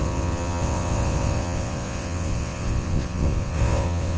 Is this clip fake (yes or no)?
yes